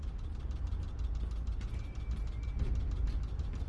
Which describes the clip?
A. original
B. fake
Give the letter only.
A